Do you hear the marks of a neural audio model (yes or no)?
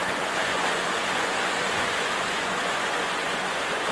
yes